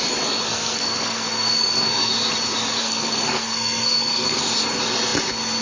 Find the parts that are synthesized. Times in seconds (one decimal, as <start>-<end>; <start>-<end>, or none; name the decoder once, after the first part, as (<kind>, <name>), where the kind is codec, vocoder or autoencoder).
0.4-2.1 (codec, SNAC); 2.8-4.4